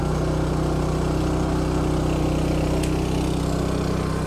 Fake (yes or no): no